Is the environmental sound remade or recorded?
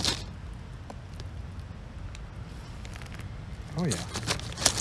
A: recorded